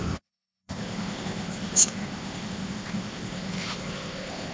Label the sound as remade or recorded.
remade